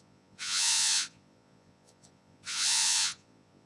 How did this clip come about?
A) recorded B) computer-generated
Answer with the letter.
B